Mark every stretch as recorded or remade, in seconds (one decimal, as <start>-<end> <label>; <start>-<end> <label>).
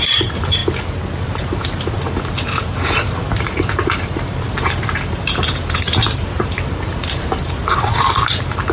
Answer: 0.0-0.6 remade; 0.6-1.2 recorded; 1.2-8.7 remade